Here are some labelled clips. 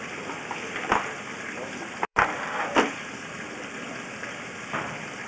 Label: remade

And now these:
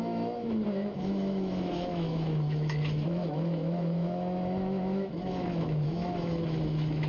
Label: remade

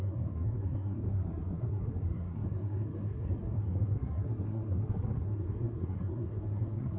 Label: remade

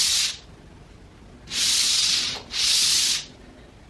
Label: recorded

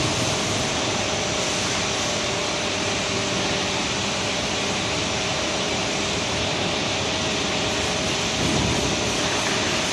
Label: recorded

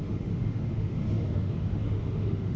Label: remade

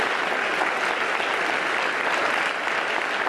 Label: recorded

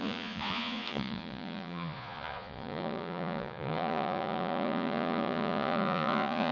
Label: remade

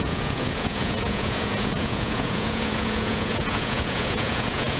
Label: remade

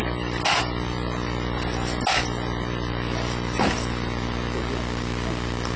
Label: recorded